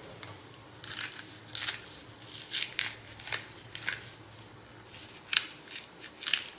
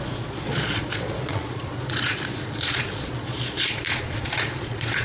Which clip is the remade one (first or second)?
second